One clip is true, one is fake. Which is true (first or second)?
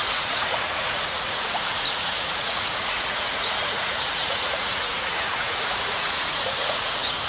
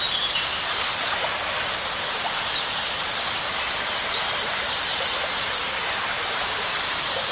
second